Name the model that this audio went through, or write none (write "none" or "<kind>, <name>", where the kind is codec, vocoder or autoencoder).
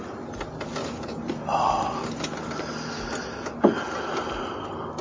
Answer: none